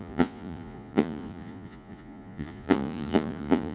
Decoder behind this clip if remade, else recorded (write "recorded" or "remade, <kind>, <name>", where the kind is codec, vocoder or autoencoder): remade, vocoder, Vocos